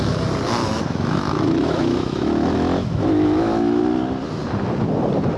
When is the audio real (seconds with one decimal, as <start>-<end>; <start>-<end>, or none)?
0.0-0.6; 3.8-5.4

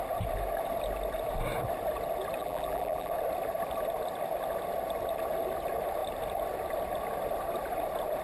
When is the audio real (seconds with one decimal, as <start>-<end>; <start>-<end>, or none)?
0.0-2.4; 3.1-8.2

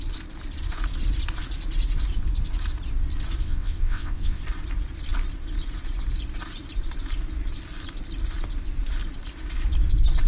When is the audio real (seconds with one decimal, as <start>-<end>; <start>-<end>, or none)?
0.0-3.4; 4.4-10.3

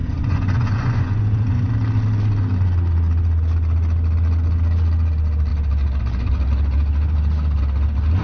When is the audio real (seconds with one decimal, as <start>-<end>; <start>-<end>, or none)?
1.7-8.2

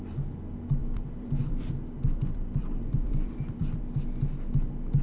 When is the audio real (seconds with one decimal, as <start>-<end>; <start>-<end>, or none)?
0.0-0.8; 3.8-5.0

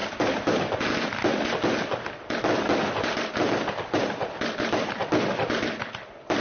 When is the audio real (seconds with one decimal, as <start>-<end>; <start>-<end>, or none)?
0.0-6.4

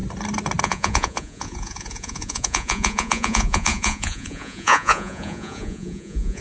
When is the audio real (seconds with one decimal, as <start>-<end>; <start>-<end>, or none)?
0.0-0.6